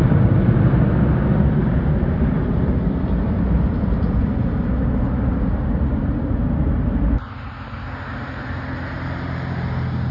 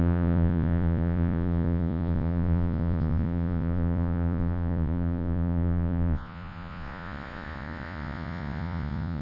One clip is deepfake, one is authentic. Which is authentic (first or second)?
first